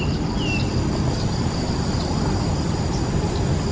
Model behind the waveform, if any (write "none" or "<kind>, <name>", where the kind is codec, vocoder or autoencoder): none